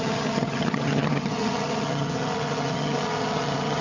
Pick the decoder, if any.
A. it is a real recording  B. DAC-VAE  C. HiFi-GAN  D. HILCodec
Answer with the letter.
C